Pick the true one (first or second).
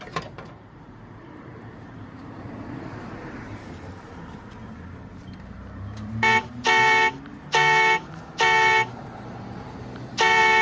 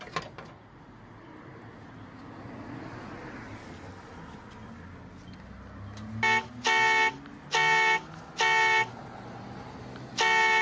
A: second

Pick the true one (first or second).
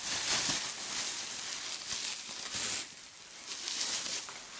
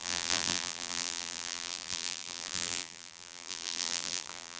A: first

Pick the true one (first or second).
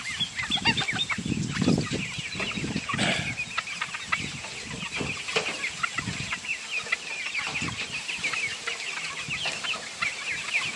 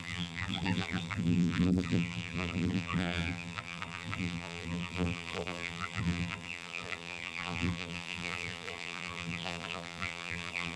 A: first